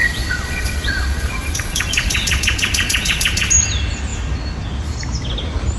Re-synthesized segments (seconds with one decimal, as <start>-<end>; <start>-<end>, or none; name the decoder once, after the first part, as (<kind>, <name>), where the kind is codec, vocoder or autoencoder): 0.0-3.5 (vocoder, Vocos)